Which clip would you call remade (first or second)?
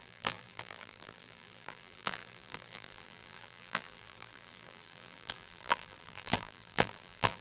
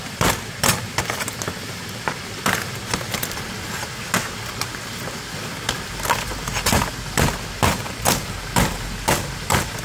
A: first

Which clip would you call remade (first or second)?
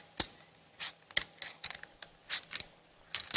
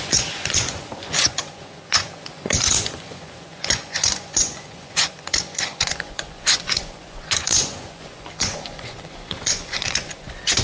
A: second